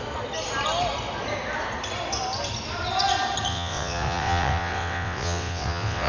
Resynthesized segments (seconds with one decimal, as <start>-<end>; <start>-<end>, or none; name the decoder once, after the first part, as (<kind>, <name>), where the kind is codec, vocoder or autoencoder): 3.5-6.1 (vocoder, WaveNeXt)